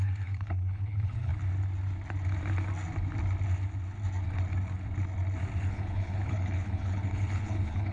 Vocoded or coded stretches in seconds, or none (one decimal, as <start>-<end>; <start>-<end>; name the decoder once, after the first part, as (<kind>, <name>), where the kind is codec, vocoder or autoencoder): 0.0-1.3 (codec, HILCodec); 5.6-7.9